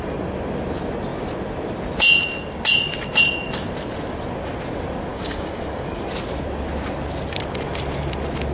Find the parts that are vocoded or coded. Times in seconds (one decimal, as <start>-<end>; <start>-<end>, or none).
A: 5.1-6.0